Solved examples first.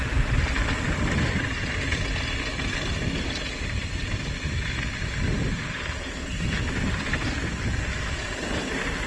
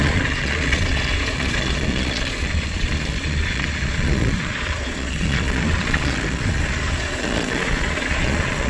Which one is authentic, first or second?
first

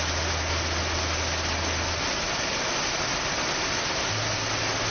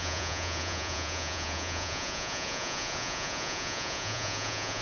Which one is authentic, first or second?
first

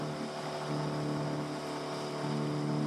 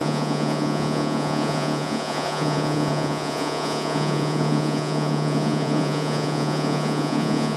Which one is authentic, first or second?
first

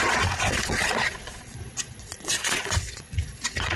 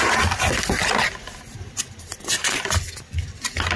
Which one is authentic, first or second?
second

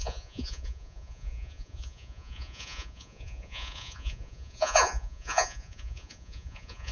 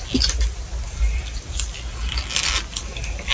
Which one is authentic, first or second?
second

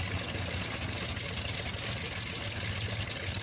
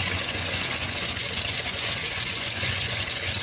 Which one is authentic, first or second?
first